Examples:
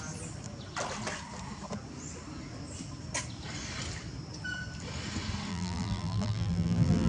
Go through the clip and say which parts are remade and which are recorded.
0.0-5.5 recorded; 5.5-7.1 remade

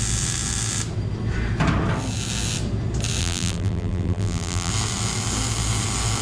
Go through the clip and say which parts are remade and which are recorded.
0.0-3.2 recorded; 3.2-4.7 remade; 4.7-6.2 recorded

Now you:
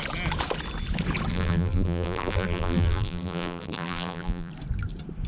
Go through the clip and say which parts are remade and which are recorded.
0.0-1.3 recorded; 1.3-4.5 remade; 4.5-5.3 recorded